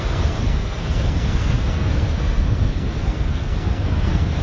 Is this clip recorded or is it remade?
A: remade